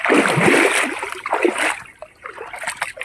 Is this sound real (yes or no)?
yes